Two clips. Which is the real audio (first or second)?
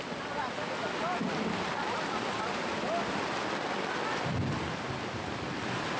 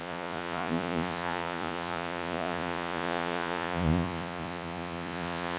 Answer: first